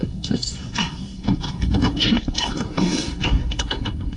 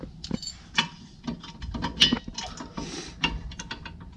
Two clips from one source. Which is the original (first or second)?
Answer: second